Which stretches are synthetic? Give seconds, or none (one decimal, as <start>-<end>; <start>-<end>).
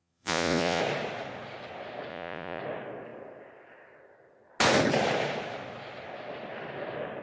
0.0-0.8; 2.1-2.6